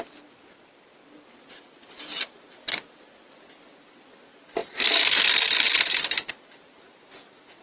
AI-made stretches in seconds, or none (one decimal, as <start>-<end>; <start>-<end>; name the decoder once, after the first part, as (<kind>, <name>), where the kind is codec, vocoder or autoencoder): none